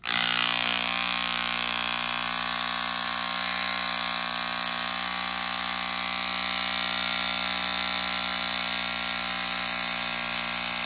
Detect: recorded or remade recorded